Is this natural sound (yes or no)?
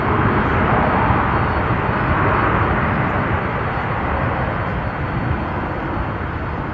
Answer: yes